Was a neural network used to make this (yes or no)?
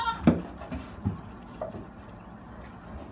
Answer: no